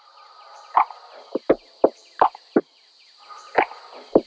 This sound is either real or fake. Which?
real